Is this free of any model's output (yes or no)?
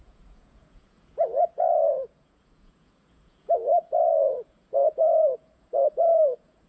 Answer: no